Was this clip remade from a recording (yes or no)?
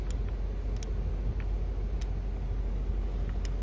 no